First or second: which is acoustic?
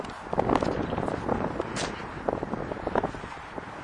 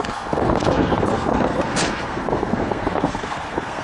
first